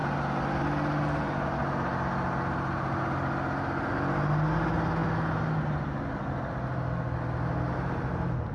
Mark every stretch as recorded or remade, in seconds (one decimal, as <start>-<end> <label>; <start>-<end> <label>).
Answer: 0.0-8.5 recorded